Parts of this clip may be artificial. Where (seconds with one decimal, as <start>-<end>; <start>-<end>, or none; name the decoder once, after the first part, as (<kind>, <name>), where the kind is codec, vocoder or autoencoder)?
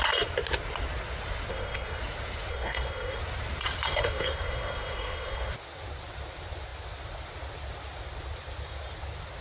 1.5-2.0 (codec, SNAC); 2.5-3.2; 3.9-5.5